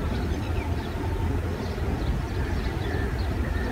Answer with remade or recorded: recorded